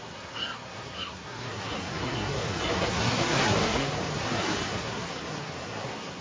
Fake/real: fake